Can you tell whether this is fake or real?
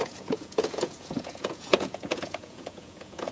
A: fake